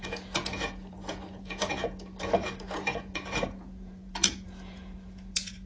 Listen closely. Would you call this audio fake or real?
fake